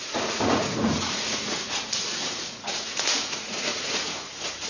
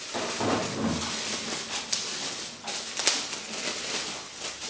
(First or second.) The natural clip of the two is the second